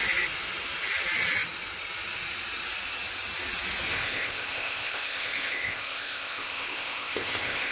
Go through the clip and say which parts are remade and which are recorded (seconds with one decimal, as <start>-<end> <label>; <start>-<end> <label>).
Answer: 0.0-3.9 recorded; 3.9-7.7 remade